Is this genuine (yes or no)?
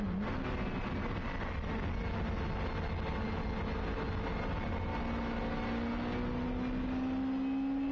yes